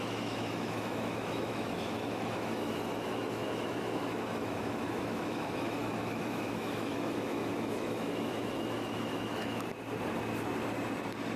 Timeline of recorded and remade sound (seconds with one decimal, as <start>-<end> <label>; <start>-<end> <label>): 0.0-9.7 remade; 9.7-11.4 recorded